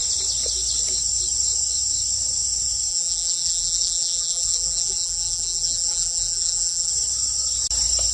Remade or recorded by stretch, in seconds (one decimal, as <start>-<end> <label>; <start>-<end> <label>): 0.0-2.9 recorded; 2.9-6.9 remade; 6.9-8.1 recorded